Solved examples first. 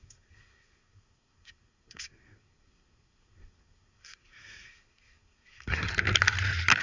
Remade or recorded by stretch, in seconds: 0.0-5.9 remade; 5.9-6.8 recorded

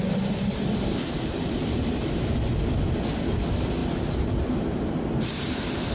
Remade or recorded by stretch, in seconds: 0.0-5.9 recorded

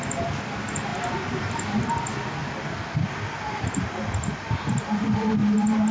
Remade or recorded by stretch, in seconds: 0.0-5.9 recorded

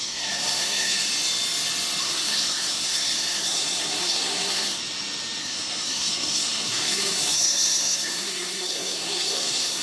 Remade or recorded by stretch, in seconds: 0.0-1.1 remade; 1.1-2.0 recorded; 2.0-4.8 remade; 4.8-5.4 recorded; 5.4-9.8 remade

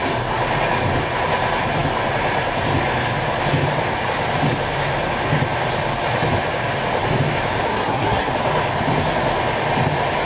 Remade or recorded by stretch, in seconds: 0.0-7.7 recorded; 7.7-8.3 remade; 8.3-10.3 recorded

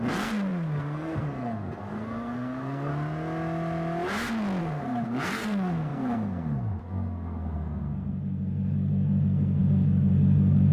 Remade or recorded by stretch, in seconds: 0.0-2.9 remade; 2.9-4.6 recorded; 4.6-10.7 remade

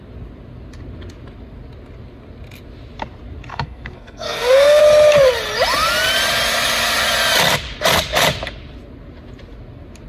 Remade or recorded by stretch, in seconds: 0.0-3.5 recorded; 3.5-4.8 remade; 4.8-10.1 recorded